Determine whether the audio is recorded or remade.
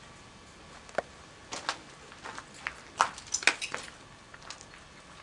recorded